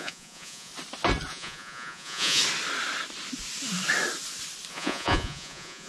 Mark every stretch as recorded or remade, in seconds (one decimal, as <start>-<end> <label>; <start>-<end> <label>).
0.0-0.7 remade; 0.7-1.3 recorded; 1.3-2.4 remade; 2.4-4.7 recorded; 4.7-5.9 remade